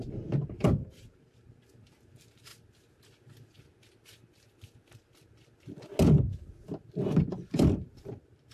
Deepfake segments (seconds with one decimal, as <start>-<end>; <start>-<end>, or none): 0.0-2.5; 7.5-8.5